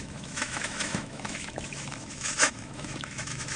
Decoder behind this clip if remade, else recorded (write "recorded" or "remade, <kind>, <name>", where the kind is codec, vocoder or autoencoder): remade, autoencoder, DAC-VAE